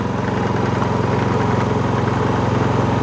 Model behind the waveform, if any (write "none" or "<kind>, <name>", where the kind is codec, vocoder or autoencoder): none